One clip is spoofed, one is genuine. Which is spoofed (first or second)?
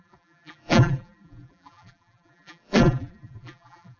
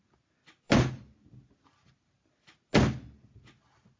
first